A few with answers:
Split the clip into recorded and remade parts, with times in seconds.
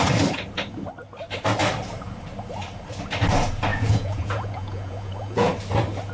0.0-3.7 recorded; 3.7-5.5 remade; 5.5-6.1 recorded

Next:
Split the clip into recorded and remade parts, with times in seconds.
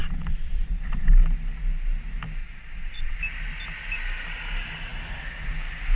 0.0-1.1 remade; 1.1-2.4 recorded; 2.4-3.2 remade; 3.2-6.0 recorded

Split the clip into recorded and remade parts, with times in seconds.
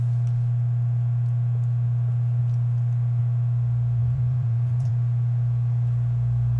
0.0-4.0 recorded; 4.0-4.9 remade; 4.9-6.6 recorded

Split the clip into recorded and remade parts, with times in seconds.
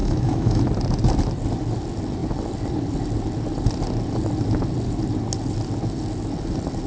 0.0-0.6 remade; 0.6-6.9 recorded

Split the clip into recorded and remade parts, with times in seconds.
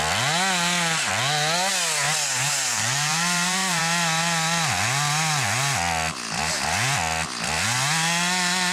0.0-2.7 recorded; 2.7-3.8 remade; 3.8-8.7 recorded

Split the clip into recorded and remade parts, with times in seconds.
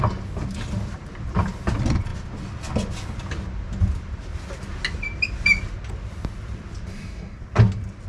0.0-6.9 recorded; 6.9-7.4 remade; 7.4-8.1 recorded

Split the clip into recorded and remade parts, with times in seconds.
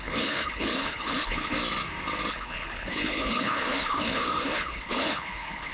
0.0-1.6 remade; 1.6-2.3 recorded; 2.3-5.7 remade